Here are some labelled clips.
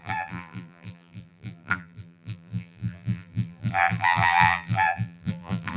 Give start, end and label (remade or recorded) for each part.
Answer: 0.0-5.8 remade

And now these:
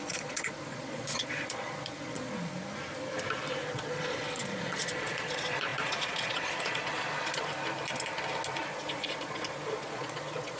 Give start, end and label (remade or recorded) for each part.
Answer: 0.0-2.5 remade; 2.5-3.5 recorded; 3.5-7.5 remade; 7.5-8.6 recorded; 8.6-10.6 remade

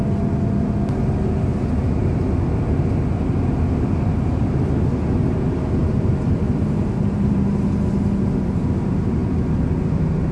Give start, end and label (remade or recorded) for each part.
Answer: 0.0-5.8 recorded; 5.8-7.5 remade; 7.5-10.3 recorded

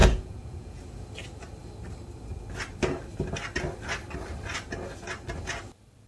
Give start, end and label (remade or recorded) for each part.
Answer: 0.0-0.8 remade; 0.8-6.1 recorded

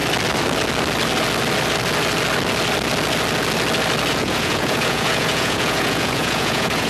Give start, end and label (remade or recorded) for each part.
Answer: 0.0-4.1 recorded; 4.1-6.9 remade

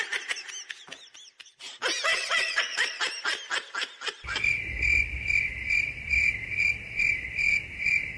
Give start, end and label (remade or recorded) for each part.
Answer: 0.0-2.1 recorded; 2.1-3.0 remade; 3.0-8.2 recorded

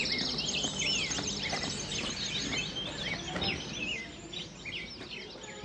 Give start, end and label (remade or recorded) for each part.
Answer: 0.0-5.6 recorded